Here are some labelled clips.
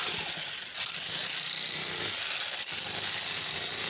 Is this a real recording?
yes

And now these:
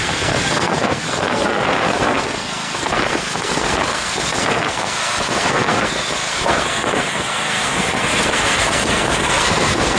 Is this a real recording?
no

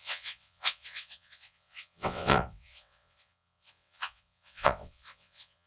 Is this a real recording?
no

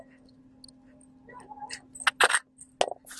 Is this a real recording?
yes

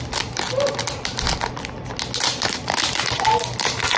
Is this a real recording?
yes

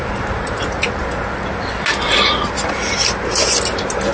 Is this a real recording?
yes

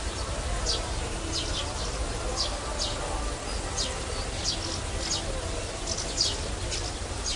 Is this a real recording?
yes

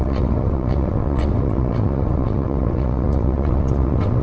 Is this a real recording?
no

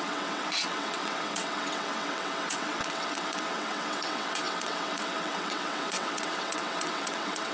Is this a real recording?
no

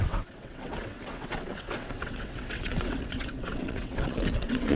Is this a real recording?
no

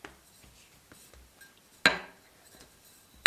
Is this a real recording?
yes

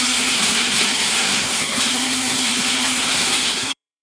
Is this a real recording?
no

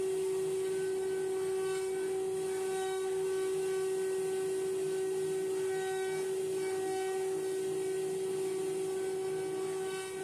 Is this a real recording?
yes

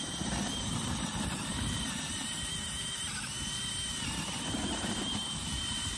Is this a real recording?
yes